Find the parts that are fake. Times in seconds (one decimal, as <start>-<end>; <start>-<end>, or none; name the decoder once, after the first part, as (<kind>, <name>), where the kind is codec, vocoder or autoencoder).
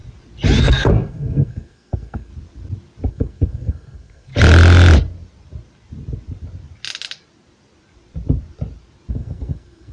0.6-2.3 (codec, SNAC); 3.1-4.3; 9.1-9.9